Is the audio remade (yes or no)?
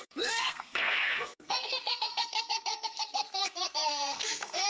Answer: yes